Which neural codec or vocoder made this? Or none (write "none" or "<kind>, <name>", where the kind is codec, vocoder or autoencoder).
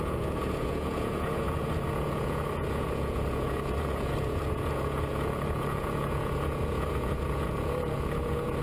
vocoder, Vocos